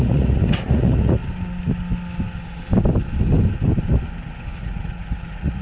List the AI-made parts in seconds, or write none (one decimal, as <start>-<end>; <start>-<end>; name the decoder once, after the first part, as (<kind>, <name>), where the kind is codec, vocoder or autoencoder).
0.0-1.2 (vocoder, Vocos); 4.6-5.6